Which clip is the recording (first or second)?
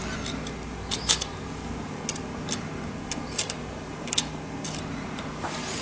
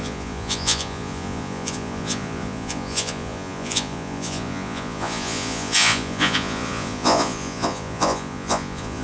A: first